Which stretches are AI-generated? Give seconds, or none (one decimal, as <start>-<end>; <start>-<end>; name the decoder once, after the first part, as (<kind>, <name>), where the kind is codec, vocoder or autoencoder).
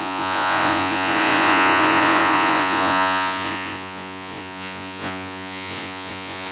0.0-6.5 (vocoder, Vocos)